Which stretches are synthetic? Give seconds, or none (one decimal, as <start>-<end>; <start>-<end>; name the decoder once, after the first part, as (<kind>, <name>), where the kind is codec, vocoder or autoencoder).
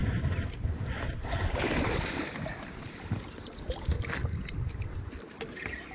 0.0-3.3 (vocoder, BigVGAN v2)